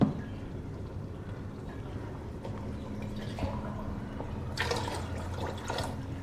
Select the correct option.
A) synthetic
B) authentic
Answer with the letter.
A